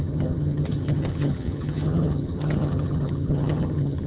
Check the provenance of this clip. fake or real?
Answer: fake